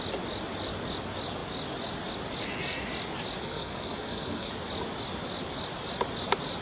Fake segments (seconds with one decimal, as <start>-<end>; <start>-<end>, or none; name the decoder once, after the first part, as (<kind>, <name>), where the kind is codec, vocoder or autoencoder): 3.4-4.5 (codec, SNAC)